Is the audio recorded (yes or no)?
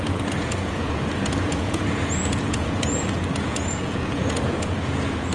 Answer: no